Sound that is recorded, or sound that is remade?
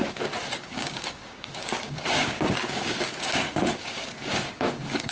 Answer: remade